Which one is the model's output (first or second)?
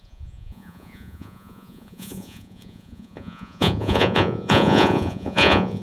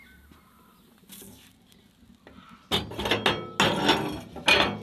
first